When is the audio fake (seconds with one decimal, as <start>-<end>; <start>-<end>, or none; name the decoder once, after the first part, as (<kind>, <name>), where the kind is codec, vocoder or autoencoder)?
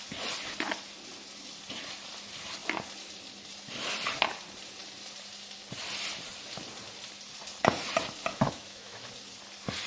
8.3-9.1 (autoencoder, DAC-VAE)